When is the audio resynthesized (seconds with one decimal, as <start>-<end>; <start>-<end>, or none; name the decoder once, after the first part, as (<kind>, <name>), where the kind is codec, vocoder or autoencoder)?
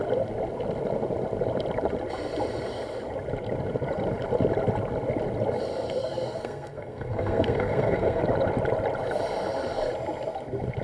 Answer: 6.0-8.2 (codec, SNAC)